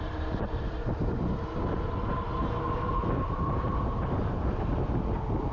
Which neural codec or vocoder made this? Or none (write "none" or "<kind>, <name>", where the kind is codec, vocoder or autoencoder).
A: none